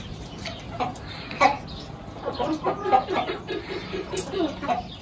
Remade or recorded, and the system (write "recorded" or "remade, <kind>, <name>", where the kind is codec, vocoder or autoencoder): recorded